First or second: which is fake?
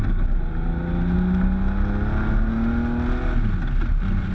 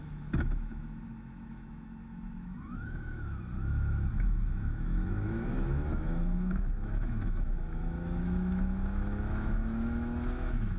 second